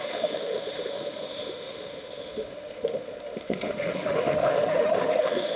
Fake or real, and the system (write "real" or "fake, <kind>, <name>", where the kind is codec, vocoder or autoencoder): fake, autoencoder, DAC-VAE